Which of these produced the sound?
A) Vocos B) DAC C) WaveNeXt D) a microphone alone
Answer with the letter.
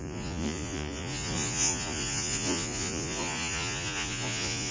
A